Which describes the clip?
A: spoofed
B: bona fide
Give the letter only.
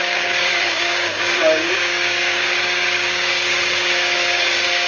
A